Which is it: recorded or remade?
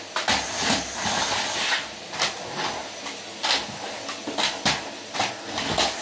recorded